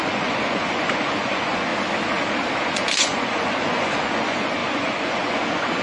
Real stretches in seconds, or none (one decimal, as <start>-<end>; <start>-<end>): 1.7-2.6